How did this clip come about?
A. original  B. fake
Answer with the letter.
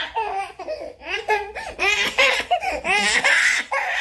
B